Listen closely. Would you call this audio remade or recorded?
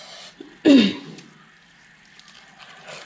recorded